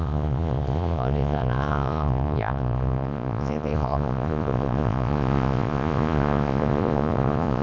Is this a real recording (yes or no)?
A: no